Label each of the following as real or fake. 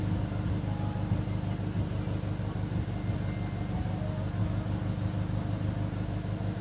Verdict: real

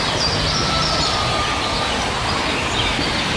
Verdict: real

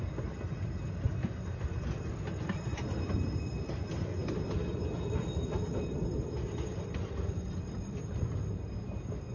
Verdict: real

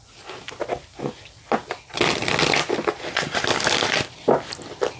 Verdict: real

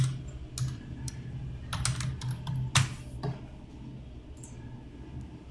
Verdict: real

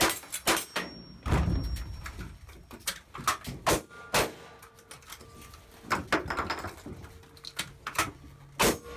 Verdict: real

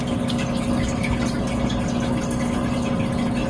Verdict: real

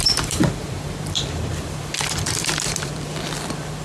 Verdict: fake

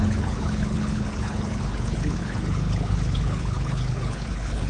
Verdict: fake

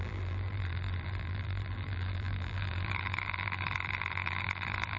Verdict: fake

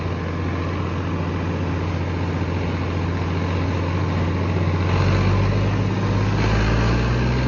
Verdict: real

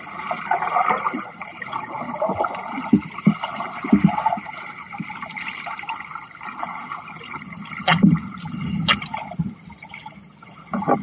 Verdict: real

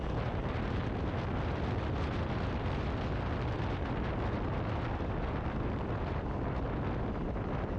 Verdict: real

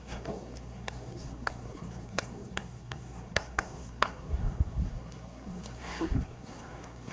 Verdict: fake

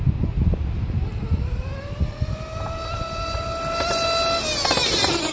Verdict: real